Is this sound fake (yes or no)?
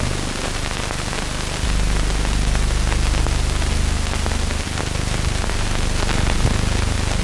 no